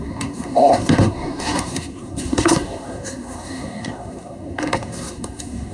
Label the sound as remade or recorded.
remade